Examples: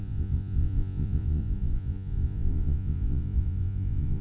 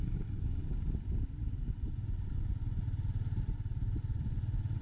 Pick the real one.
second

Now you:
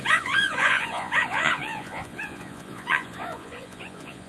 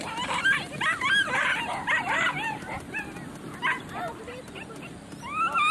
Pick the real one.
second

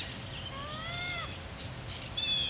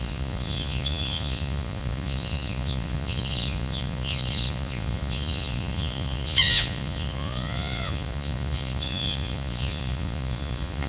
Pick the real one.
first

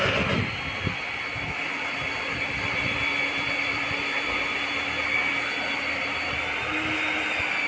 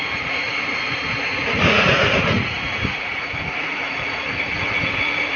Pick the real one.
first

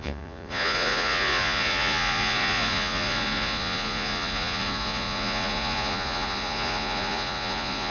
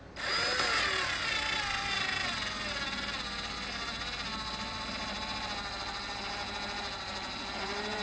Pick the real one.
second